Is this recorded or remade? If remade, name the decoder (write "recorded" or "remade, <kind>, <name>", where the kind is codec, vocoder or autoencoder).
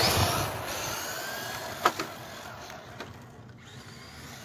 recorded